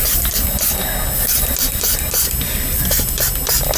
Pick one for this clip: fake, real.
real